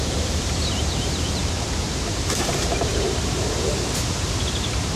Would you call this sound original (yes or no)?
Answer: no